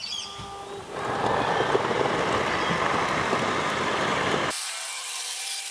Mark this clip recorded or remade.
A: recorded